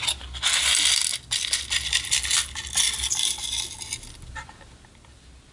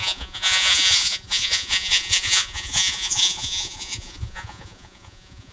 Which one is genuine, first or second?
first